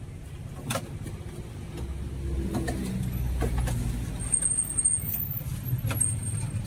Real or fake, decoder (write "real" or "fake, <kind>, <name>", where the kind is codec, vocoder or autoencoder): real